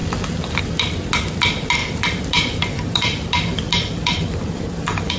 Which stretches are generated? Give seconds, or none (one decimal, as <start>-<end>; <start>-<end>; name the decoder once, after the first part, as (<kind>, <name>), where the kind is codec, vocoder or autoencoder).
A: 1.8-5.2 (vocoder, BigVGAN v2)